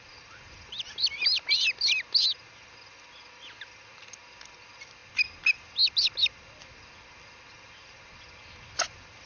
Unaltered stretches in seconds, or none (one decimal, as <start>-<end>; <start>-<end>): 0.0-9.3